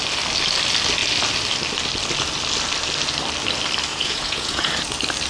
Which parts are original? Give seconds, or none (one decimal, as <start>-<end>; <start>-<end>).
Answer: 0.0-3.9; 4.7-5.3